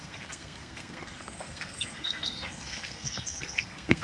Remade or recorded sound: remade